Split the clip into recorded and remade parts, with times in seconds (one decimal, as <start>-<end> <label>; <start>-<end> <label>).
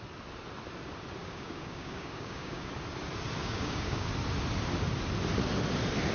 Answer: 0.0-1.2 recorded; 1.2-2.7 remade; 2.7-3.4 recorded; 3.4-4.1 remade; 4.1-6.1 recorded